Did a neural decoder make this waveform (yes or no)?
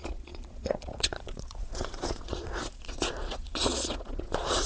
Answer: yes